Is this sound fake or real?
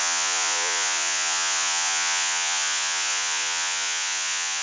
fake